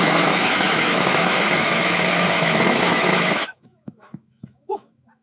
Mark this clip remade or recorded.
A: remade